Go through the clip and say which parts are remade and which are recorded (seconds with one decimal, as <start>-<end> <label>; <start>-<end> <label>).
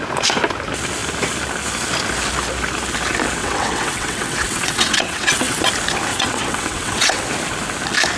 0.0-3.4 recorded; 3.4-5.6 remade; 5.6-6.1 recorded; 6.1-7.2 remade; 7.2-8.2 recorded